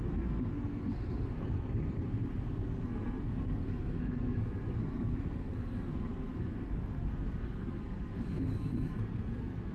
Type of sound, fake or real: fake